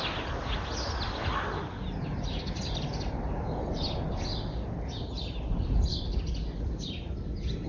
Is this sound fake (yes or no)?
no